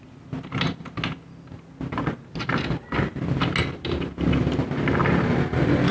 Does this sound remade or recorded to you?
recorded